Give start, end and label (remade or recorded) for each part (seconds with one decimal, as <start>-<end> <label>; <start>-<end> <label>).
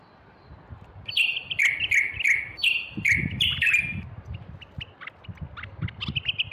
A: 0.0-6.5 recorded